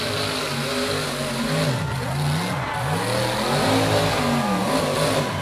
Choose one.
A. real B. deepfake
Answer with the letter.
A